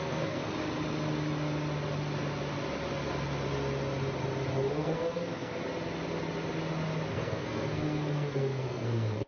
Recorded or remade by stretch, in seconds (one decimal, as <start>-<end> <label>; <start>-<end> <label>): 0.0-0.4 remade; 0.4-4.7 recorded; 4.7-5.5 remade; 5.5-7.1 recorded; 7.1-9.3 remade